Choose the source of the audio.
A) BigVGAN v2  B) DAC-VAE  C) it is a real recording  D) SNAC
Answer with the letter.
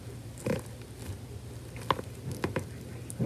C